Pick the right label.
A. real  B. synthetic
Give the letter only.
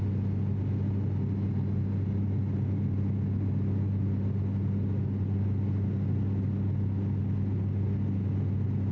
A